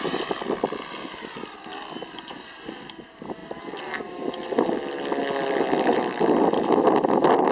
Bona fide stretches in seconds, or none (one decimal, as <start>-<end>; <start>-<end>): 0.0-7.5